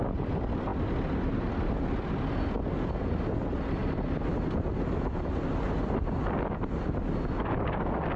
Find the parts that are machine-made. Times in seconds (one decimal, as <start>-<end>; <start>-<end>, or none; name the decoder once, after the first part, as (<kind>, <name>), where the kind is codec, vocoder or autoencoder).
none